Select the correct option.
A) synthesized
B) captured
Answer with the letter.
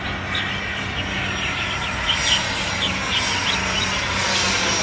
B